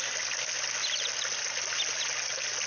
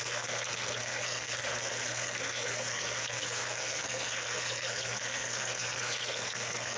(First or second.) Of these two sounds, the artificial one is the second